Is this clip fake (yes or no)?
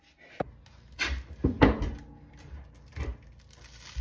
no